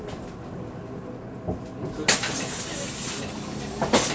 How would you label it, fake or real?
real